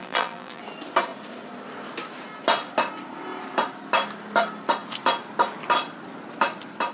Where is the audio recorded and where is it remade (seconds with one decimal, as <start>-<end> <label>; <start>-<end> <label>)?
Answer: 0.0-0.6 remade; 0.6-6.9 recorded